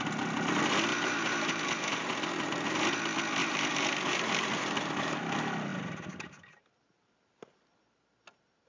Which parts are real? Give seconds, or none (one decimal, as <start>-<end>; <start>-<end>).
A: 0.0-0.9; 3.0-3.4; 5.2-5.7; 7.1-8.7